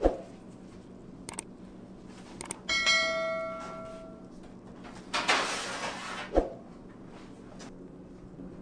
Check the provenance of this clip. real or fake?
real